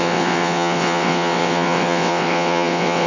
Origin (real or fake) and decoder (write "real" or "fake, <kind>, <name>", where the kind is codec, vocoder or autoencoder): fake, vocoder, WaveNeXt